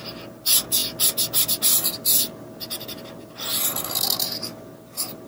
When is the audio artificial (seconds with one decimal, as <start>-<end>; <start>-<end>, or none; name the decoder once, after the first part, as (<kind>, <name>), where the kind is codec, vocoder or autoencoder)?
3.5-4.4 (vocoder, BigVGAN v2)